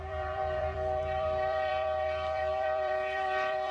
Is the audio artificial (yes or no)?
yes